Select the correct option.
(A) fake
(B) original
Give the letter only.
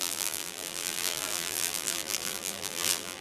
A